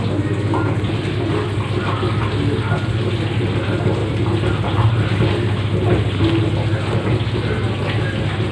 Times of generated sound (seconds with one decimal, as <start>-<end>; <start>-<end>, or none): none